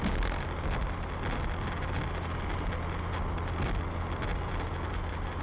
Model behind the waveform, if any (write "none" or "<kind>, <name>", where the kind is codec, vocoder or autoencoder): none